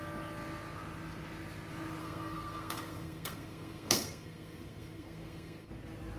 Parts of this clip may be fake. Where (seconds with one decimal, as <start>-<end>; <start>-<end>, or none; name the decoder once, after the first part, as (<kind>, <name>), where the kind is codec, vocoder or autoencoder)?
2.0-5.7 (codec, SNAC)

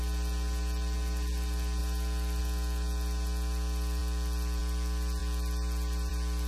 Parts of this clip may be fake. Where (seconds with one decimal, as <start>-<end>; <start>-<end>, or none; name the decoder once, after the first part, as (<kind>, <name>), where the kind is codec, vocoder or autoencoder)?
none